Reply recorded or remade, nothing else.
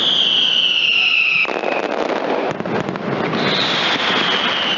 recorded